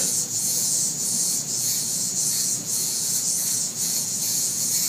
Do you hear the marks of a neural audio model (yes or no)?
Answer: yes